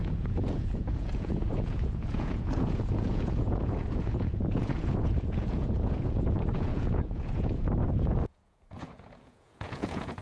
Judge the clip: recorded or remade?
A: remade